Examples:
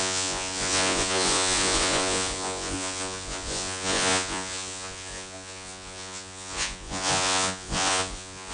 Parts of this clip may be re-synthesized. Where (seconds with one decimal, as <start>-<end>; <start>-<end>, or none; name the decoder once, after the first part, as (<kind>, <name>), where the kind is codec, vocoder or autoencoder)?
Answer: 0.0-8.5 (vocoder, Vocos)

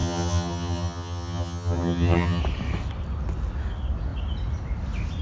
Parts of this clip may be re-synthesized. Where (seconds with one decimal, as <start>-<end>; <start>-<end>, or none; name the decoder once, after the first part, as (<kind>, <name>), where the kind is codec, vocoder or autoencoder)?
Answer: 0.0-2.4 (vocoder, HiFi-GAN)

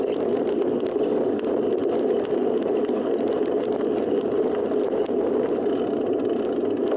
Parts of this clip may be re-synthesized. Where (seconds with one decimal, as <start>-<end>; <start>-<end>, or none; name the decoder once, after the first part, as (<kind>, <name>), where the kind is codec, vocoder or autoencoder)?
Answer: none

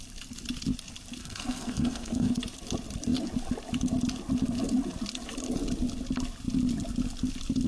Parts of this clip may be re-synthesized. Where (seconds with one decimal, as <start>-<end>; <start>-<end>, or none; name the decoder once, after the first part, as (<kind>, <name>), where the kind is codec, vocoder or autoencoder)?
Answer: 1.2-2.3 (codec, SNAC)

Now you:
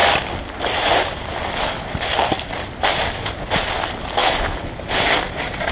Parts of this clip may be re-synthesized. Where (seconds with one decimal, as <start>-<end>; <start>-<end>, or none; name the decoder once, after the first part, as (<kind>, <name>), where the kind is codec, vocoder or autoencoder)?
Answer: 4.2-4.7 (codec, HILCodec)

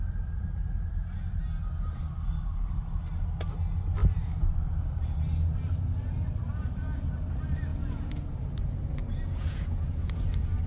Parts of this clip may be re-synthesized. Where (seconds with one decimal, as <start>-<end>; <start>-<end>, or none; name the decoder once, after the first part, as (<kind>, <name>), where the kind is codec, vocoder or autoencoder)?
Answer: 7.7-8.3 (vocoder, Vocos); 9.0-10.2

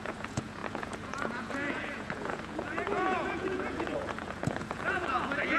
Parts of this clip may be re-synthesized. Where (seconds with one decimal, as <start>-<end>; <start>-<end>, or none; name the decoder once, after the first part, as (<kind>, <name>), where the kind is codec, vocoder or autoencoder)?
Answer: 0.0-5.6 (vocoder, Vocos)